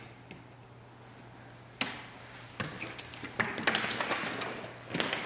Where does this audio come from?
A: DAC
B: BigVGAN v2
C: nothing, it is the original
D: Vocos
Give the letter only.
C